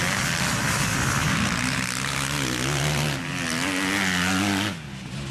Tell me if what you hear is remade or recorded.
recorded